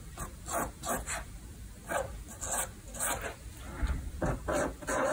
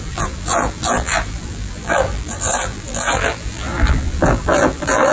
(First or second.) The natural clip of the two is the first